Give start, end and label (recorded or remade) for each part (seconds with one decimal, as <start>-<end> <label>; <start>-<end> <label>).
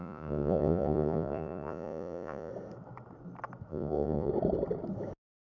0.0-2.5 remade; 2.5-3.7 recorded; 3.7-4.3 remade; 4.3-5.6 recorded